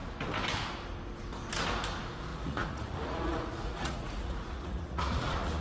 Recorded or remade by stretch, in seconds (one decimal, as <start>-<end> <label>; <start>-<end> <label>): 0.0-2.3 recorded; 2.3-5.6 remade